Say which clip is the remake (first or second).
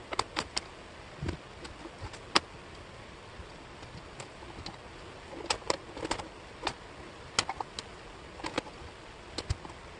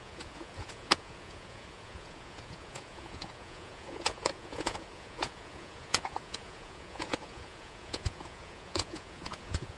second